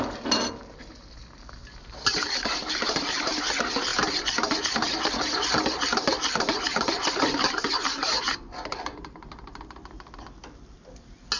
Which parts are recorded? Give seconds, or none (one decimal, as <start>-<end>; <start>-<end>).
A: 0.0-11.4